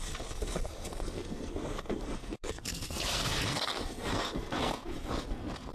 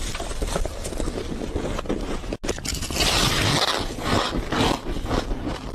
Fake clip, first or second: first